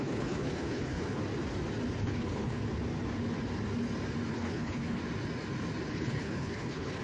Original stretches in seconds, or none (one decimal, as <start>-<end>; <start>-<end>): 1.2-2.0; 2.6-4.3; 5.0-5.9